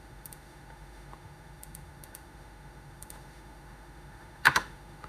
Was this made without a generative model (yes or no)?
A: no